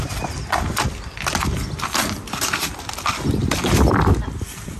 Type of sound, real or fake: real